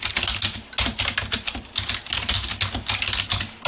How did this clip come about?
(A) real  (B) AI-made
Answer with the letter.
A